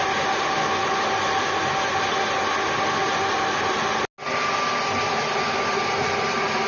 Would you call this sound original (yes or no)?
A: yes